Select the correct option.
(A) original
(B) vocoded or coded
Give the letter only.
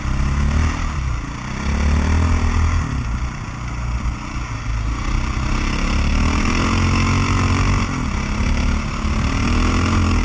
A